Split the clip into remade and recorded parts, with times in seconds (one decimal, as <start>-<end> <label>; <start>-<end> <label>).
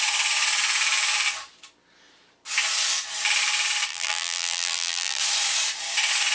0.0-3.9 recorded; 3.9-5.2 remade; 5.2-6.3 recorded